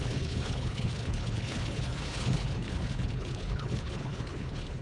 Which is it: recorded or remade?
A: remade